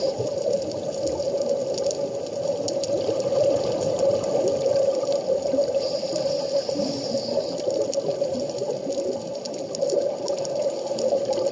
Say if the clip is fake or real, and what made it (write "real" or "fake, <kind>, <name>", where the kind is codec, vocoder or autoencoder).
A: real